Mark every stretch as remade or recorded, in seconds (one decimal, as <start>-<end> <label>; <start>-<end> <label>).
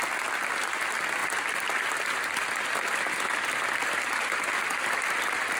0.0-5.6 recorded